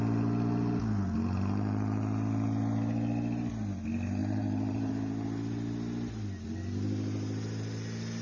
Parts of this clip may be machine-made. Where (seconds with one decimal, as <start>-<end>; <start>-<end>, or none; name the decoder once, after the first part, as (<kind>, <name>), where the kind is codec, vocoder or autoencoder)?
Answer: 4.2-4.9 (vocoder, BigVGAN v2)